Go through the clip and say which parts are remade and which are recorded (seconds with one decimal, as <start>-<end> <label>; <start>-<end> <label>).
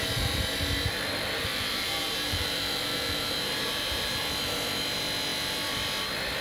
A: 0.0-1.7 recorded; 1.7-4.2 remade; 4.2-6.4 recorded